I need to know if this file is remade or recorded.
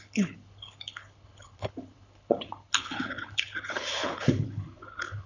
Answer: remade